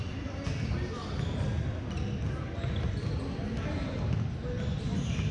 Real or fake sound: real